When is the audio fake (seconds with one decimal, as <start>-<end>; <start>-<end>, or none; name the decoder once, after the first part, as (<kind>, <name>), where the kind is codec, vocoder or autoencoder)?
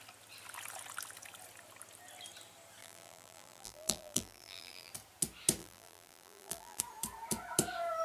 2.8-4.9 (vocoder, BigVGAN v2); 5.6-6.8